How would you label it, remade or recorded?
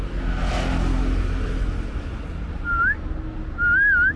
recorded